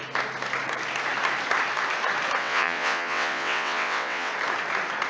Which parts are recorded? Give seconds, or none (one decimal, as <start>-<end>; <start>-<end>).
0.0-2.4; 4.3-5.1